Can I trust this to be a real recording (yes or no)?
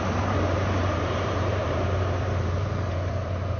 no